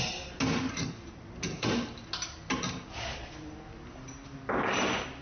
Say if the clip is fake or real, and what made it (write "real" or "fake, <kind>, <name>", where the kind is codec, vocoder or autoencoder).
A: real